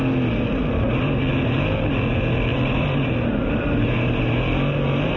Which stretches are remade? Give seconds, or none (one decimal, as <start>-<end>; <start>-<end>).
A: 0.7-1.3; 2.5-4.2